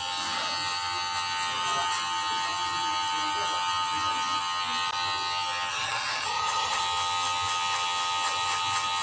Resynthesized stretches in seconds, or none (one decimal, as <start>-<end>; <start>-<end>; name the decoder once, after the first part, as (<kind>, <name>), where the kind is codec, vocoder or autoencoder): 5.7-6.8 (vocoder, HiFi-GAN)